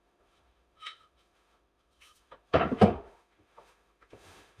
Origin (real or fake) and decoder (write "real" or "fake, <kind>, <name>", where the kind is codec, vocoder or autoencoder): fake, autoencoder, DAC-VAE